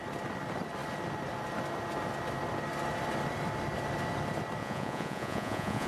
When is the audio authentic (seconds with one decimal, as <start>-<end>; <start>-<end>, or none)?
0.0-4.6